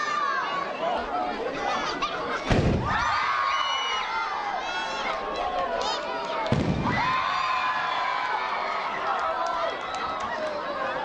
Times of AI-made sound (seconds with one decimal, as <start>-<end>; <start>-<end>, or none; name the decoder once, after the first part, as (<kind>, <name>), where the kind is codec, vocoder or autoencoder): none